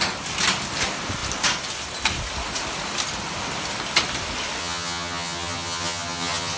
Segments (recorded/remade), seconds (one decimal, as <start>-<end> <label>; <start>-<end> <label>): 0.0-4.6 recorded; 4.6-6.6 remade